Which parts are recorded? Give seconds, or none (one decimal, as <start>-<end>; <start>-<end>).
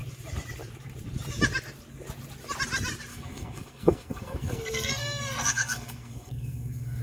0.0-3.1